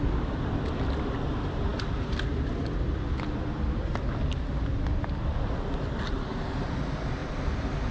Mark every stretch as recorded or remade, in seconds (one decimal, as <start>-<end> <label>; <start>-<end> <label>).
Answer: 0.0-7.9 recorded